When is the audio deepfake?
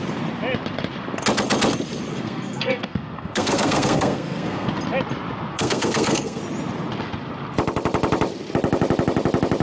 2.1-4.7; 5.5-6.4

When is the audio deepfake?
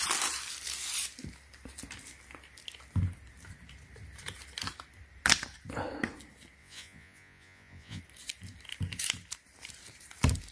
6.6-8.0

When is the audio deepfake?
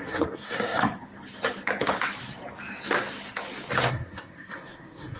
0.0-0.8; 3.9-5.2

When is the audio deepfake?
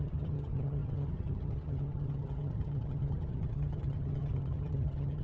0.0-5.2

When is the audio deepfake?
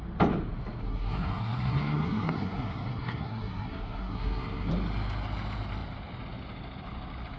0.8-4.7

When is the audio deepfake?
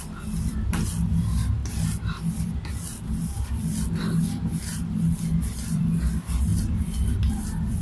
0.0-1.6; 2.2-6.5; 7.3-7.8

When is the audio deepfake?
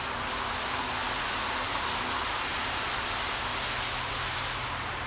none